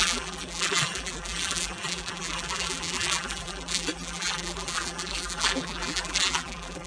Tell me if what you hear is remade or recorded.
remade